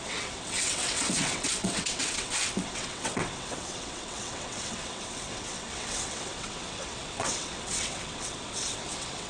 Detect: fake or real fake